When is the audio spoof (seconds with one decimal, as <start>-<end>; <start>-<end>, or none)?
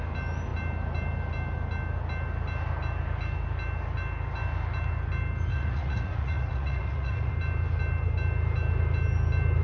5.5-7.3